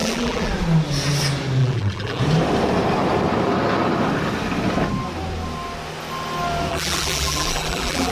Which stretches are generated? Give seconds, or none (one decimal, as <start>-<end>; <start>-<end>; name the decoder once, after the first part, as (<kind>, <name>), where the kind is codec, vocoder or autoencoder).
0.0-0.5 (vocoder, BigVGAN v2); 1.6-2.2; 6.7-8.1